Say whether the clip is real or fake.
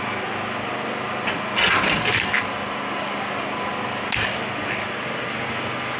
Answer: real